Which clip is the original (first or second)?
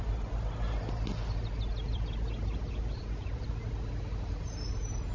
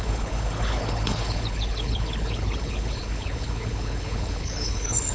first